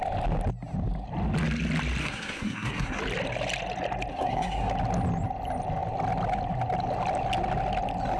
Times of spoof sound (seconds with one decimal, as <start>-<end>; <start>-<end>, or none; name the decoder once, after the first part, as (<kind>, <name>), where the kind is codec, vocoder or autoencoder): 2.0-3.0 (codec, SNAC); 4.1-4.7